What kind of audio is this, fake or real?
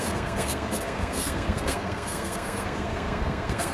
fake